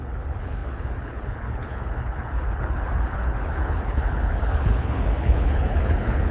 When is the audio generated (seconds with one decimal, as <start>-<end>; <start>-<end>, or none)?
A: 0.0-6.3